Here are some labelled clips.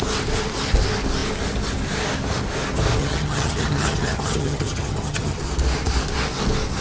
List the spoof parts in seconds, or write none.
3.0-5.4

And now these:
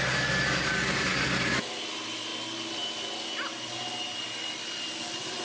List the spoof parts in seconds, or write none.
none

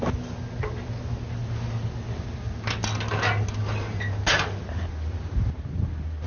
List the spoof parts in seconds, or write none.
none

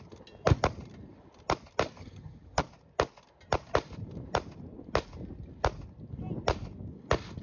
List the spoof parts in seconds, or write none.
2.0-2.6

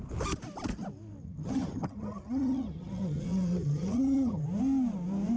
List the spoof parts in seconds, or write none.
1.2-4.4

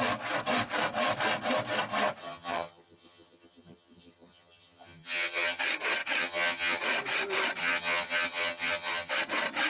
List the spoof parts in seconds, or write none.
2.2-5.6; 6.2-6.8; 7.6-9.1

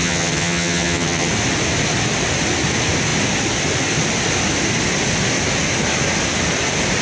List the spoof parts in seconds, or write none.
0.0-1.3